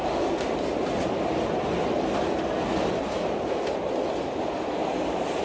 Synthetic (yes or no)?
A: no